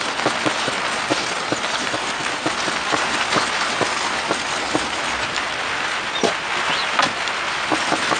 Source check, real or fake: real